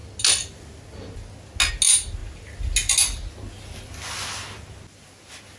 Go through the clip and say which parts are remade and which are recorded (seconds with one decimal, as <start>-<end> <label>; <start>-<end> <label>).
0.0-5.6 recorded